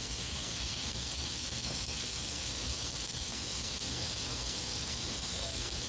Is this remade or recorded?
remade